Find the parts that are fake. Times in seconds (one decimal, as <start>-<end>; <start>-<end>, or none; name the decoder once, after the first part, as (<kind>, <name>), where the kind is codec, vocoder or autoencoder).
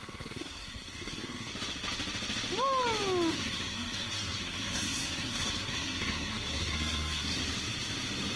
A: 0.0-1.5 (codec, SNAC); 3.3-7.4